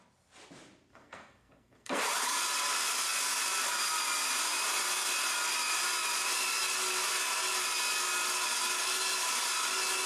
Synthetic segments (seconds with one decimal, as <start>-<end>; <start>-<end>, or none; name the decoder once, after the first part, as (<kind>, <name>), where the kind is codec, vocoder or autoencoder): 0.9-2.0 (codec, SNAC)